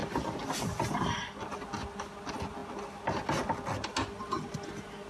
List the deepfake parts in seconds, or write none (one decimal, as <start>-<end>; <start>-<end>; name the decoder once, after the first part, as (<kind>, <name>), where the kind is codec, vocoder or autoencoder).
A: none